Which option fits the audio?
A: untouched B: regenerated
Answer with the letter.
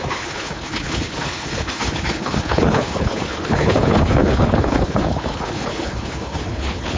B